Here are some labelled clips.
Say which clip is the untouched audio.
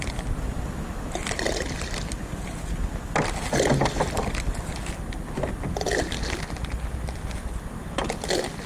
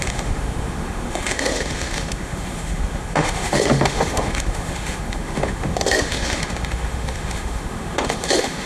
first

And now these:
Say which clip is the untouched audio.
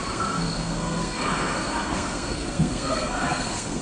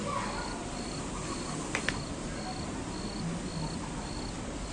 second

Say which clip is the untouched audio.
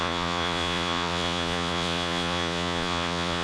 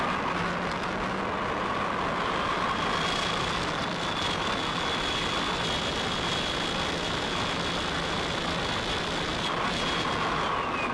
second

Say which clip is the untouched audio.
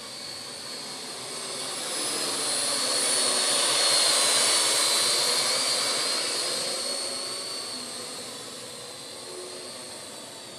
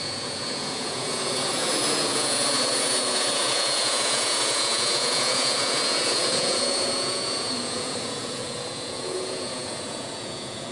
first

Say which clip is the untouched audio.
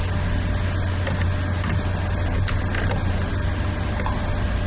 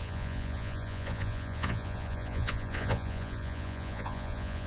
first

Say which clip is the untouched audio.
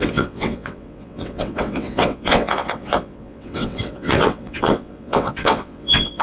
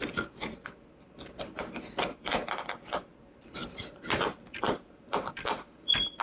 second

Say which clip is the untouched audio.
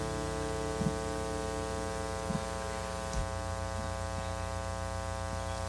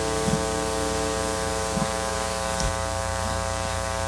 first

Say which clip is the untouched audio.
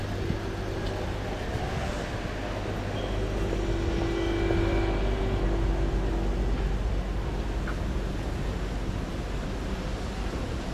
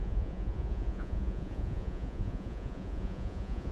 first